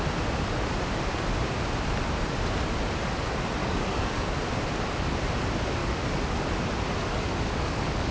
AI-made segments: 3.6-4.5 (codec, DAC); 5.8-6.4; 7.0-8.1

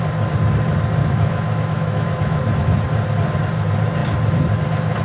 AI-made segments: 1.0-2.4 (autoencoder, DAC-VAE)

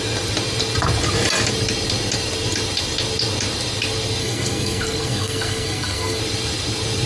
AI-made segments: 4.2-6.2 (codec, SNAC)

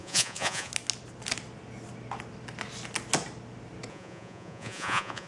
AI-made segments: 0.0-0.7 (vocoder, Vocos); 3.9-5.3

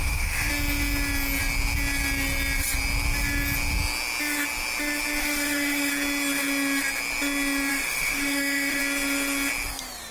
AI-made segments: 0.0-0.5 (autoencoder, DAC-VAE); 5.2-5.9; 7.7-8.8

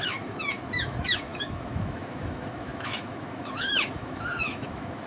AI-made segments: 0.0-5.1 (autoencoder, DAC-VAE)